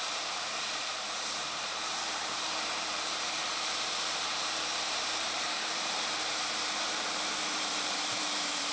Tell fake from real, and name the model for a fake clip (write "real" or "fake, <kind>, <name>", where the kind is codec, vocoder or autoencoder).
fake, vocoder, BigVGAN v2